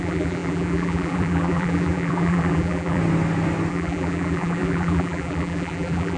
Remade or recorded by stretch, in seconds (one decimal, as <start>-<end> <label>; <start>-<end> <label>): 0.0-3.0 remade; 3.0-3.7 recorded; 3.7-6.2 remade